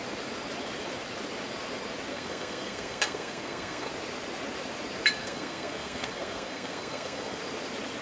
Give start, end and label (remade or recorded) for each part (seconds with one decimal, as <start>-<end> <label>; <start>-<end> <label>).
0.0-2.1 recorded; 2.1-3.9 remade; 3.9-5.2 recorded; 5.2-7.4 remade; 7.4-8.0 recorded